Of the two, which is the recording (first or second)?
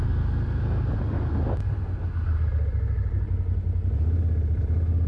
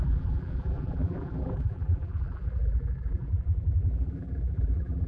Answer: first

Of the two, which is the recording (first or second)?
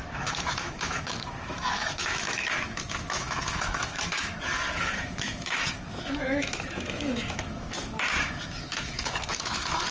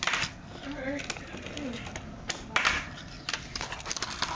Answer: second